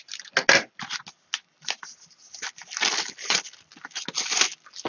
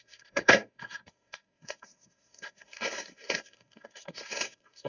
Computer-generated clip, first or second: second